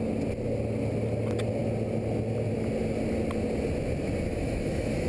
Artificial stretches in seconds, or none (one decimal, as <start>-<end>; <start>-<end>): 4.3-5.1